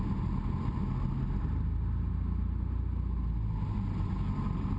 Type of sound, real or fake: real